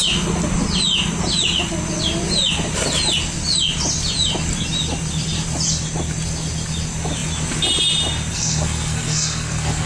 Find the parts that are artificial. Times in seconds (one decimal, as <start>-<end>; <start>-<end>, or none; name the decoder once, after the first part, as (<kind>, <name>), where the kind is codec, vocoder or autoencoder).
8.3-9.9 (codec, SNAC)